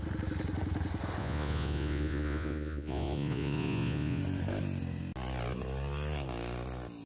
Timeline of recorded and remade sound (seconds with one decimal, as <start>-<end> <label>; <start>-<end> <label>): 0.0-1.2 recorded; 1.2-4.2 remade; 4.2-7.1 recorded